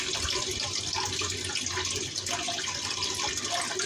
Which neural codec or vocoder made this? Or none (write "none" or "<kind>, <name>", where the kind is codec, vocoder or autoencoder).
none